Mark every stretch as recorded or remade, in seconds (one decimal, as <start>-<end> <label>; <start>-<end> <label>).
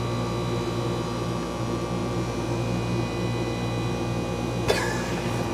0.0-5.5 recorded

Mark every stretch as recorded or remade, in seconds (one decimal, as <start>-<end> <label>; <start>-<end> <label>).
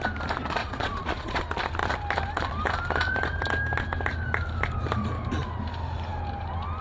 0.0-0.6 recorded; 0.6-1.4 remade; 1.4-6.8 recorded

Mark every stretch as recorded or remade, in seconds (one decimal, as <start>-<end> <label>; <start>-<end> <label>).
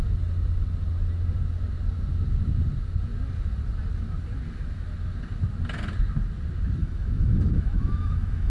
0.0-6.8 recorded; 6.8-8.5 remade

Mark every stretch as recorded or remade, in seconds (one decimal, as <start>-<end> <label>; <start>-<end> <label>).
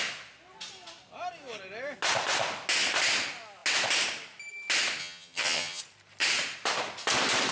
0.0-5.0 recorded; 5.0-5.8 remade; 5.8-7.5 recorded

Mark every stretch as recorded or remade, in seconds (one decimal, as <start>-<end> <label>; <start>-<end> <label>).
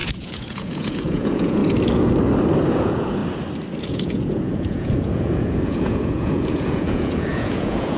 0.0-1.6 remade; 1.6-2.7 recorded; 2.7-3.2 remade; 3.2-3.8 recorded; 3.8-8.0 remade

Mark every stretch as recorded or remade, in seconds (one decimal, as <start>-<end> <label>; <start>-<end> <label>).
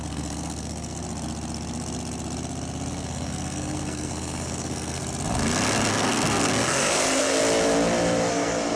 0.0-1.0 remade; 1.0-2.9 recorded; 2.9-5.0 remade; 5.0-5.9 recorded; 5.9-7.4 remade; 7.4-8.3 recorded; 8.3-8.8 remade